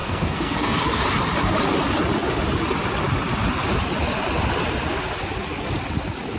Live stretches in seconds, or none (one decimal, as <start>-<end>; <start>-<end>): 1.0-6.4